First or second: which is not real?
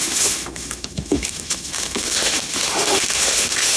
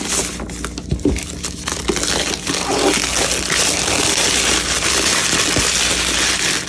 first